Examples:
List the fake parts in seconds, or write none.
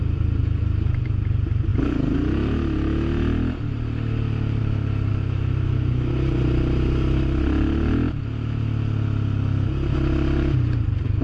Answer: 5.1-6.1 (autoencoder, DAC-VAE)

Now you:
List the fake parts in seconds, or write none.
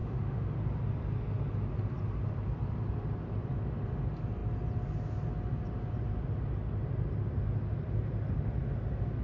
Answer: 0.0-0.6 (autoencoder, DAC-VAE)